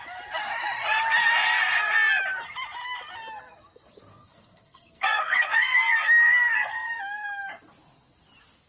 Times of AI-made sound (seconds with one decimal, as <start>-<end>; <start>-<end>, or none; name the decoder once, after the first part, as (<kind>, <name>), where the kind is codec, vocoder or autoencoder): 4.1-7.0 (codec, SNAC)